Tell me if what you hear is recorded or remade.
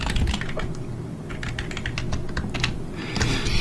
recorded